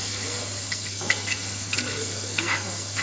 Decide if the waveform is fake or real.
fake